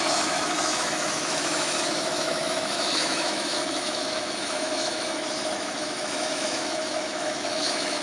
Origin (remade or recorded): remade